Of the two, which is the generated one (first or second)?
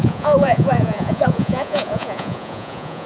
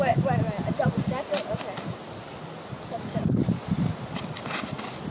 first